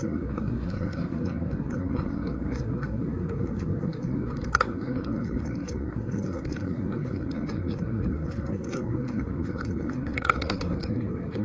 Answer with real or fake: fake